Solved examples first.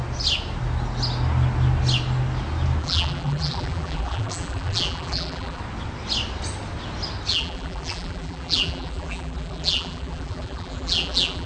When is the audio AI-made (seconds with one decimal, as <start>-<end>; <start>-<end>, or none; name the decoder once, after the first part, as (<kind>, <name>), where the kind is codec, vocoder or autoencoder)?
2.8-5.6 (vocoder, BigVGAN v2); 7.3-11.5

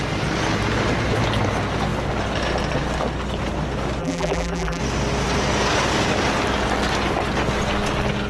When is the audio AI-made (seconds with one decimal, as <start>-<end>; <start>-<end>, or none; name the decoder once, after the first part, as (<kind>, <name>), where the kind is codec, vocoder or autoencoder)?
4.0-4.8 (vocoder, BigVGAN v2)

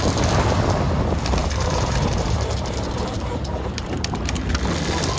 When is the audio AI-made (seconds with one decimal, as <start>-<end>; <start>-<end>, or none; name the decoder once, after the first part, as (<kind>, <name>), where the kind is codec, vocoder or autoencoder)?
1.4-4.5 (vocoder, BigVGAN v2)